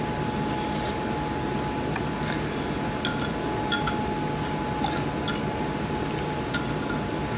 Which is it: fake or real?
real